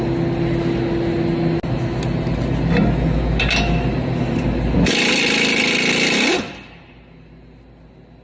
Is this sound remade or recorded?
recorded